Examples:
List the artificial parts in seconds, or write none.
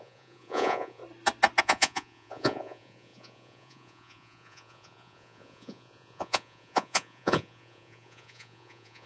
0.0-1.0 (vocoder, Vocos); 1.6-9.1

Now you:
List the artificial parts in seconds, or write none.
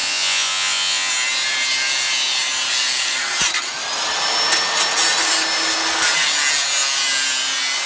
0.0-1.1 (vocoder, Vocos)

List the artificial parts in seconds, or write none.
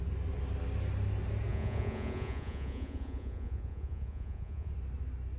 1.5-4.7 (vocoder, Vocos)